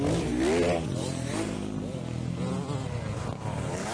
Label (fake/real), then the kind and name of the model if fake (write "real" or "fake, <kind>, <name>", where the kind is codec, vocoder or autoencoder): real